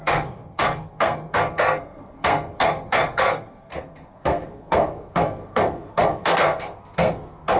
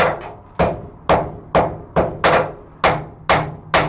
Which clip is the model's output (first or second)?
first